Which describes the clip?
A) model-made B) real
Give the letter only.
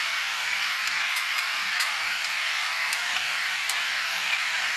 A